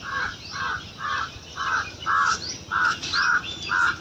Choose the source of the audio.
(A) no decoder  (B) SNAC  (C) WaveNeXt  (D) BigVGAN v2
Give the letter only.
A